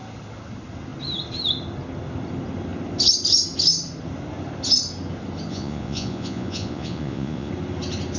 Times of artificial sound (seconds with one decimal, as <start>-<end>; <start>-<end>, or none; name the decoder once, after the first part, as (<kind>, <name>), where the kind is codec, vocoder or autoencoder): 5.5-7.5 (vocoder, Vocos)